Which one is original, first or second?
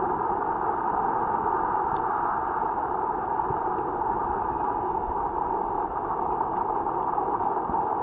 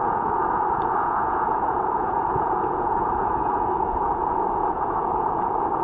first